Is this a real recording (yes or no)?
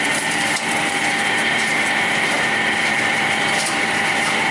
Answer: no